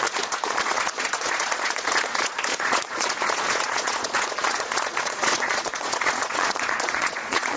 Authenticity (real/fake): fake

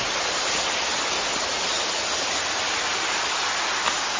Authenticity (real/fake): real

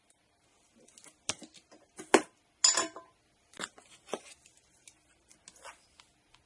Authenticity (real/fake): real